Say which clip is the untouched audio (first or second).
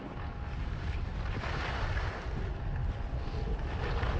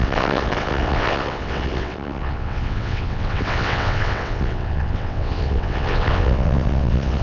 first